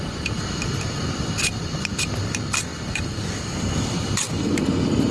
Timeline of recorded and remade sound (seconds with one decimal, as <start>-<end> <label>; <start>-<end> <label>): 0.0-2.7 recorded; 2.7-5.1 remade